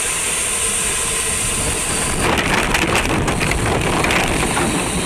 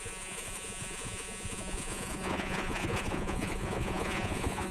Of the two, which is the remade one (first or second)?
second